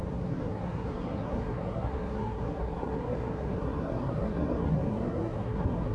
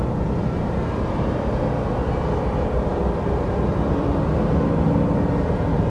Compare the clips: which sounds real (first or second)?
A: second